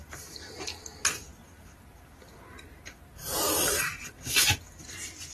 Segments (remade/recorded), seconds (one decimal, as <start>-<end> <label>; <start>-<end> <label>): 0.0-0.5 remade; 0.5-1.4 recorded; 1.4-4.6 remade; 4.6-5.3 recorded